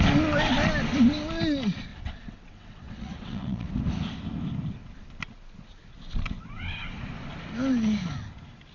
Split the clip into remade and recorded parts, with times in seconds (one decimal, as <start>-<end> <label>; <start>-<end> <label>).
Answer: 0.0-1.9 recorded; 1.9-3.7 remade; 3.7-8.7 recorded